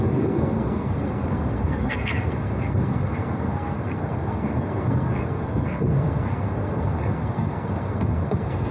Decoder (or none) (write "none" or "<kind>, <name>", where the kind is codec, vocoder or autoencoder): codec, SNAC